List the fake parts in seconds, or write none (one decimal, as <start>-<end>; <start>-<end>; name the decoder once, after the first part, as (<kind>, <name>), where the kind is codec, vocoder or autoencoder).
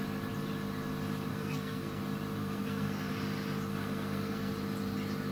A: 1.3-2.0 (codec, SNAC); 2.4-3.1; 3.7-4.5